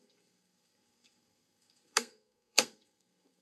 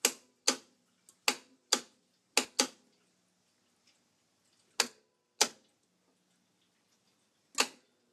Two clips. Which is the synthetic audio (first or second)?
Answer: first